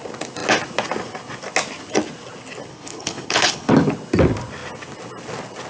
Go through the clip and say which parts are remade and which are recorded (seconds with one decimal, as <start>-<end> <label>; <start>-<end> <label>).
0.0-2.7 recorded; 2.7-3.7 remade; 3.7-5.7 recorded